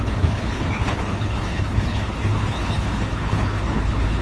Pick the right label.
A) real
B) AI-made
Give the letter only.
B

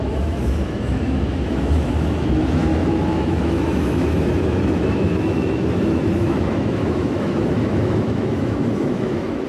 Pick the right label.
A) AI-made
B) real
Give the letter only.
A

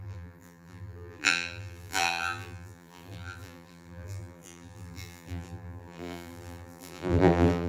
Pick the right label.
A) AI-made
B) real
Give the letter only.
A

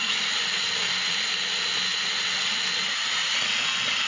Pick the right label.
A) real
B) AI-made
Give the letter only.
A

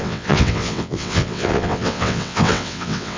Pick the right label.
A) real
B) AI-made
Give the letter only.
B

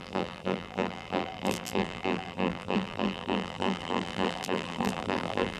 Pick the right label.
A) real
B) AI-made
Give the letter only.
B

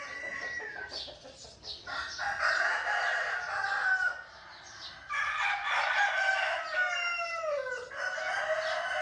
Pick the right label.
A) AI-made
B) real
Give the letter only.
B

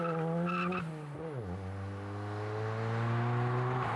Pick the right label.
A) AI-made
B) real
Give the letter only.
B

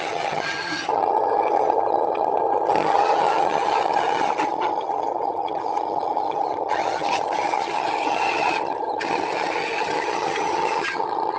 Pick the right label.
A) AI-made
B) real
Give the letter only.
A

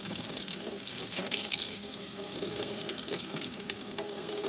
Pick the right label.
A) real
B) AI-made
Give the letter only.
B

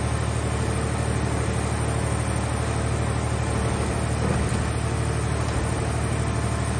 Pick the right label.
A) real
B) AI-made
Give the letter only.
A